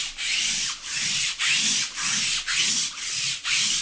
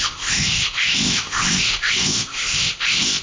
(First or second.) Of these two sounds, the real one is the first